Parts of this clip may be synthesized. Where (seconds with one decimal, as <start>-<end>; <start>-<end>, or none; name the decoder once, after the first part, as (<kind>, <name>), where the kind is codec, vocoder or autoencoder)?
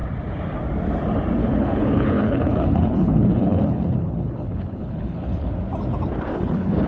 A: 1.4-5.5 (codec, HILCodec); 6.3-6.9